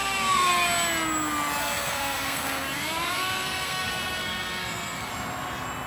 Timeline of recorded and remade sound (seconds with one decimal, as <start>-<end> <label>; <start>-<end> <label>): 0.0-0.5 remade; 0.5-1.6 recorded; 1.6-5.1 remade; 5.1-5.9 recorded